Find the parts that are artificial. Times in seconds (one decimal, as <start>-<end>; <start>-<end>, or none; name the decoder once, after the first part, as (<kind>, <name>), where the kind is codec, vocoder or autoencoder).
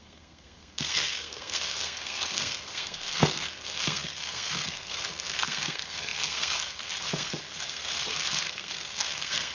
0.0-9.5 (codec, SNAC)